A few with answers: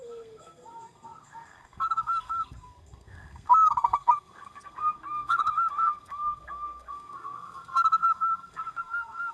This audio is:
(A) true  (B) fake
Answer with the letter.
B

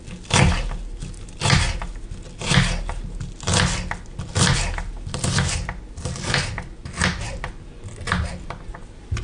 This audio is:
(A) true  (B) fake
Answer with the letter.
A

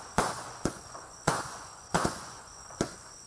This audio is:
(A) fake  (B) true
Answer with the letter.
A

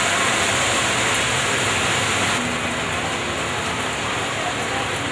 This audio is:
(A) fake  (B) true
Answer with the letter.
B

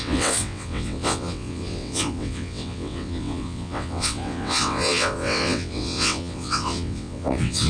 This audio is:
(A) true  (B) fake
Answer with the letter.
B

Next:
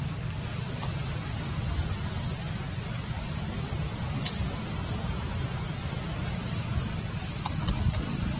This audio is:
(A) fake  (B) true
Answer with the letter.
B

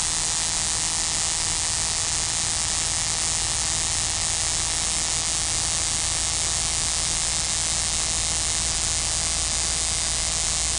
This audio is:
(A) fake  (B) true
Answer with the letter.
B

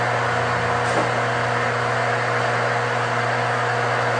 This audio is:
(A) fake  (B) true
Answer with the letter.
B